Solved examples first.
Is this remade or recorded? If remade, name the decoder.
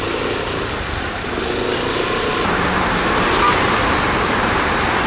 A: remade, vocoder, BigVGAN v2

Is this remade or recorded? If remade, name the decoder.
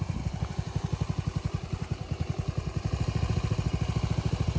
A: recorded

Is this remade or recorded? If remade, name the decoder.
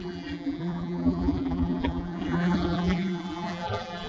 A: remade, vocoder, BigVGAN v2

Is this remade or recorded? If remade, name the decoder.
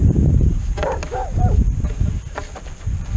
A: remade, vocoder, BigVGAN v2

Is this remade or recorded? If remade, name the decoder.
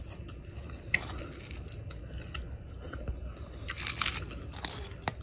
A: recorded